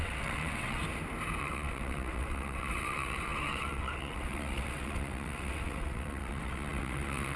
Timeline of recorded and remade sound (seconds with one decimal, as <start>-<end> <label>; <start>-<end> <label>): 0.0-0.8 remade; 0.8-1.4 recorded; 1.4-7.4 remade